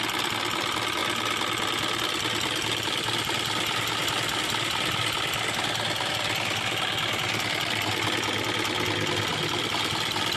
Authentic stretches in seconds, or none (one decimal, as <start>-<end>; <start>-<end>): 0.0-10.4